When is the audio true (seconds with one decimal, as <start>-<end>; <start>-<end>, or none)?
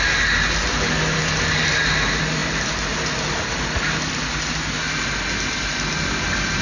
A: 0.0-6.6